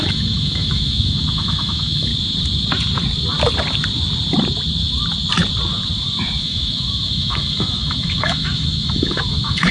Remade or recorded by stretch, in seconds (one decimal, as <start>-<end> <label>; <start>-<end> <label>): 0.0-2.1 remade; 2.1-6.4 recorded; 6.4-9.7 remade